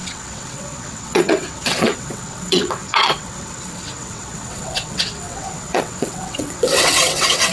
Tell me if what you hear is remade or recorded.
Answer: remade